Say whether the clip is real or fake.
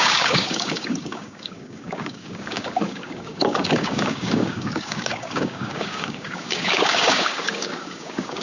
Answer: fake